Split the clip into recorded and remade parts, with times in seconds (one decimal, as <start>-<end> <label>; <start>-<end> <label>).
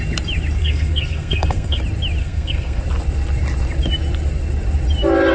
0.0-0.6 recorded; 0.6-1.8 remade; 1.8-2.2 recorded; 2.2-2.8 remade; 2.8-5.3 recorded